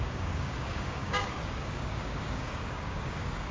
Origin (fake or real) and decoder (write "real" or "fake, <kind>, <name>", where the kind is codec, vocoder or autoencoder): fake, codec, DAC